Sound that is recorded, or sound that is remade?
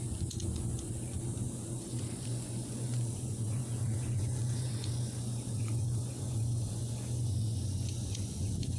remade